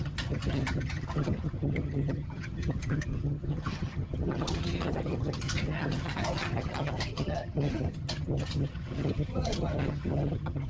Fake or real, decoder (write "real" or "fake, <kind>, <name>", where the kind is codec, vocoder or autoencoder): fake, vocoder, HiFi-GAN